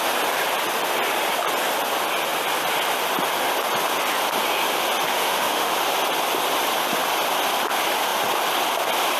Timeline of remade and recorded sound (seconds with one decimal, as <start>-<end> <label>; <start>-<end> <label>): 0.0-5.1 recorded; 5.1-5.7 remade; 5.7-9.2 recorded